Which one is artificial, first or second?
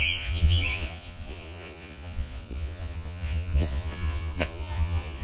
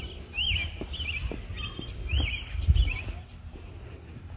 first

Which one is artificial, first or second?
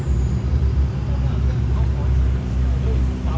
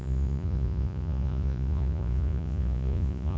second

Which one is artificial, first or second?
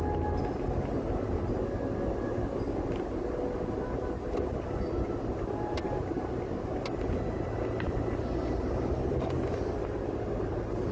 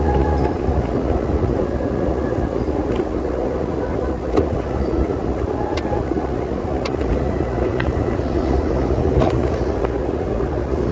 second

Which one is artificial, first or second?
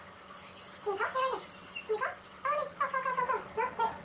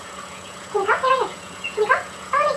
second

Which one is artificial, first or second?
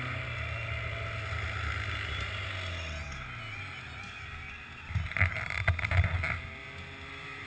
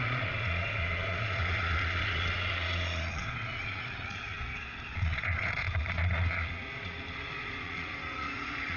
second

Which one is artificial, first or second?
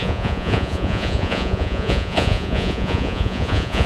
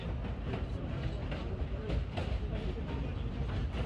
first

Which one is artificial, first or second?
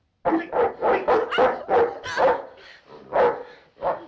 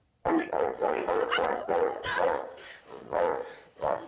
second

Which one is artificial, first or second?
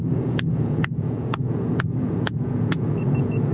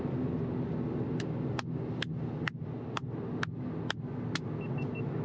first